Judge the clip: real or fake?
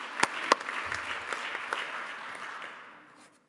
real